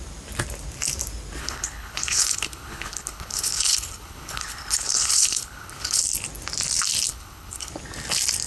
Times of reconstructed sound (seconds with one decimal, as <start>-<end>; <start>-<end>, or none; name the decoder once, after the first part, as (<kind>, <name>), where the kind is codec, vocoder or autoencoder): 1.4-6.0 (codec, HILCodec); 7.1-7.7